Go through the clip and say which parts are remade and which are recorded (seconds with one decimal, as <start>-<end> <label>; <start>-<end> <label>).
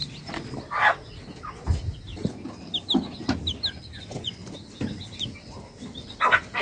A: 0.0-4.0 recorded; 4.0-4.4 remade; 4.4-6.6 recorded